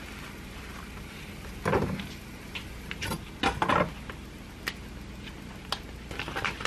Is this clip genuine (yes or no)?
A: yes